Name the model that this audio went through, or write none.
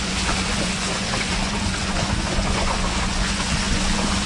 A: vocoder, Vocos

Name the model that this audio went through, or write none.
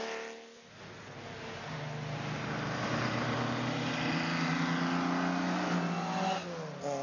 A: none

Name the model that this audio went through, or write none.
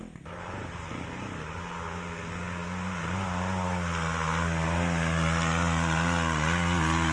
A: none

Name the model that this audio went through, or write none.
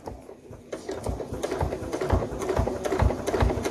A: none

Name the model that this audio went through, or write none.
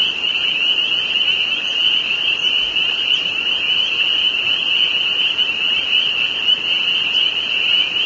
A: none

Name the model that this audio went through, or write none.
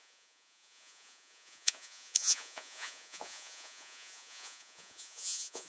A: vocoder, Vocos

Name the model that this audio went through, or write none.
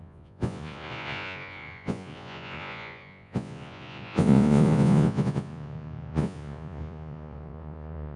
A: vocoder, Vocos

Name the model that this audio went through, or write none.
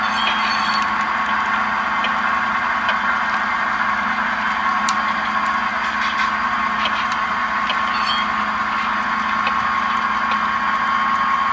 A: none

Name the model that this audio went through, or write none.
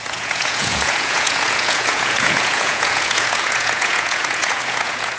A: vocoder, Vocos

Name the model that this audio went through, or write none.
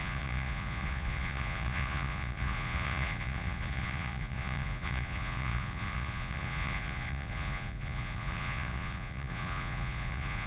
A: vocoder, Vocos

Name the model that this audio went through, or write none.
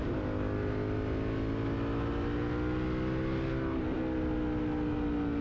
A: none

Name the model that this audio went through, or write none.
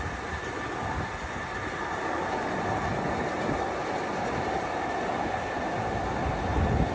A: none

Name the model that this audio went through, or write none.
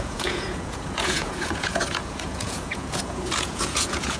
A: vocoder, Vocos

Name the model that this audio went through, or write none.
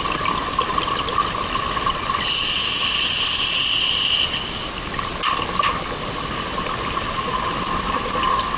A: none